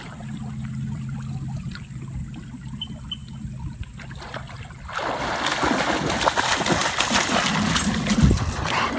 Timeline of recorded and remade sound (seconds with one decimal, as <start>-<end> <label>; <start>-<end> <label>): 0.0-9.0 recorded

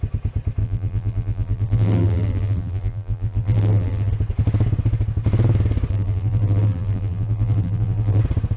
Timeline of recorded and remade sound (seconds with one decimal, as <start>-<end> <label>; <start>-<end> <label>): 0.0-0.6 recorded; 0.6-4.1 remade; 4.1-5.9 recorded; 5.9-8.2 remade; 8.2-8.6 recorded

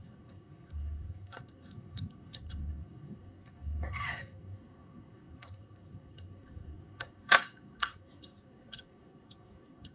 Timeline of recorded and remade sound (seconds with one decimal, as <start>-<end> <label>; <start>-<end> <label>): 0.0-9.9 remade

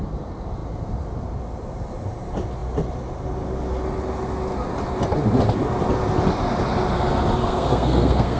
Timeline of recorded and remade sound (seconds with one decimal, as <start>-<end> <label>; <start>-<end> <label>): 0.0-7.4 recorded; 7.4-8.4 remade

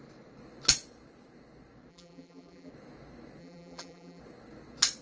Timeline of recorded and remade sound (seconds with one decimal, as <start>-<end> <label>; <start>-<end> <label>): 0.0-1.9 recorded; 1.9-2.7 remade; 2.7-3.4 recorded; 3.4-4.2 remade; 4.2-5.0 recorded